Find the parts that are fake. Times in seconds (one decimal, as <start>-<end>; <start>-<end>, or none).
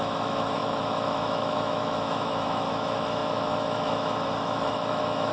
0.0-5.3